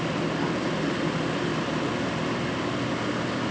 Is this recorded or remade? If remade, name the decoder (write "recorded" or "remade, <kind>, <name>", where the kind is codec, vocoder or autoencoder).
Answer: recorded